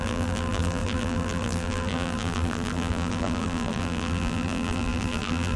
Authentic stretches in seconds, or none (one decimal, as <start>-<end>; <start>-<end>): none

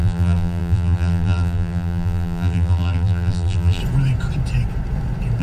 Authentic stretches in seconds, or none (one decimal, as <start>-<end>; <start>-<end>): 3.8-5.4